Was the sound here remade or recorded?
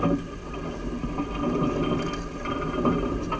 recorded